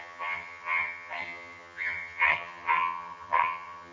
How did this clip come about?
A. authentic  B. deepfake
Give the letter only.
B